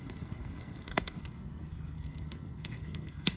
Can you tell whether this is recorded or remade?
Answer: remade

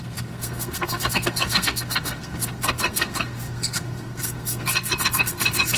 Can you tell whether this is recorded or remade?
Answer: remade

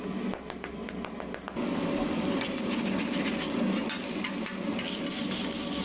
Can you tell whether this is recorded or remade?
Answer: recorded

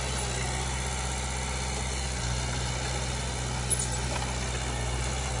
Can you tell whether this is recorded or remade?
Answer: recorded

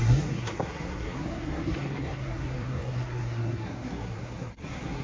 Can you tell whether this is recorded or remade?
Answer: remade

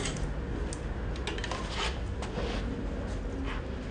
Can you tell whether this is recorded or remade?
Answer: recorded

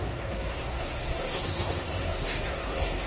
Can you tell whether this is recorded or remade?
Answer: remade